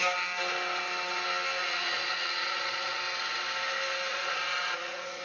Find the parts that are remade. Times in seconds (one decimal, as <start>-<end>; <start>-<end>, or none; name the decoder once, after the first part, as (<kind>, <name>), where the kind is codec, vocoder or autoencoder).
1.6-3.0 (vocoder, Vocos); 4.1-5.2